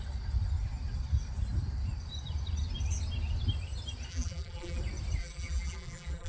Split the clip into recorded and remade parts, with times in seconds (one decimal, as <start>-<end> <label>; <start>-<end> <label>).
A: 0.0-4.1 recorded; 4.1-4.8 remade; 4.8-5.2 recorded; 5.2-6.3 remade